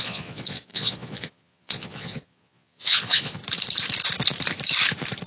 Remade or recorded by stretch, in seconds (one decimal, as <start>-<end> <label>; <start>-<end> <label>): 0.0-3.4 remade; 3.4-5.3 recorded